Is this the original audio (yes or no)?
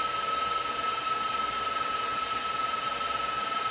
no